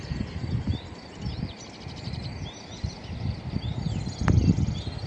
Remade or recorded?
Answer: recorded